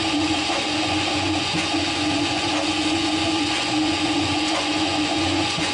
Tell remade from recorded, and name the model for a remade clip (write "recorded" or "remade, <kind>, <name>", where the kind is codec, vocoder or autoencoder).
remade, vocoder, Vocos